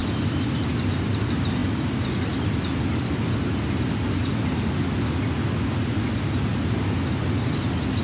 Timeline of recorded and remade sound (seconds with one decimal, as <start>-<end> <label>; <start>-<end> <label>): 0.0-0.9 remade; 0.9-8.0 recorded